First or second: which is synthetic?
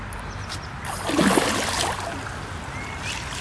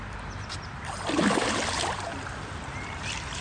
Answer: second